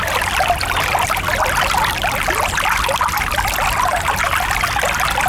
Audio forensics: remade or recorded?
recorded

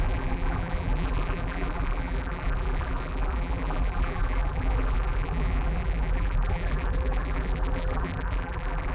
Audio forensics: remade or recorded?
remade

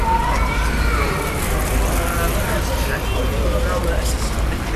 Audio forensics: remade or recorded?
recorded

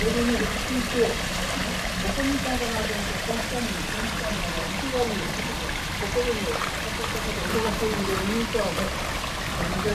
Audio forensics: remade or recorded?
recorded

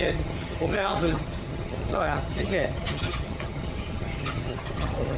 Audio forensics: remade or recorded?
remade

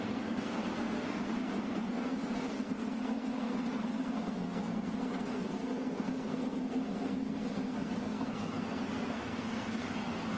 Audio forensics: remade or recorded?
remade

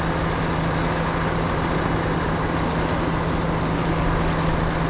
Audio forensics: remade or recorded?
recorded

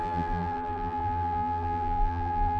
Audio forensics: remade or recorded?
remade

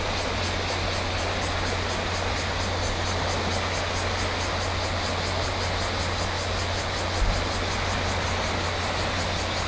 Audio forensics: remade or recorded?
recorded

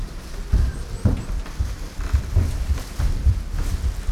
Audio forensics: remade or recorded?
recorded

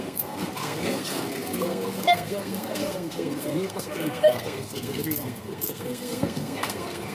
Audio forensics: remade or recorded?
remade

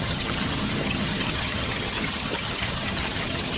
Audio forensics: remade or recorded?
remade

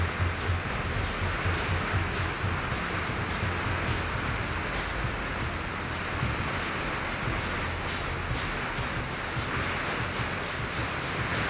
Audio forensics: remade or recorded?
recorded